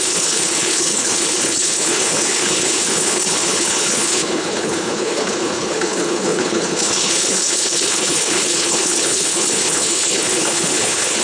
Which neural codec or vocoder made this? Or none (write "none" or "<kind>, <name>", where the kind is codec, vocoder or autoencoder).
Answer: codec, HILCodec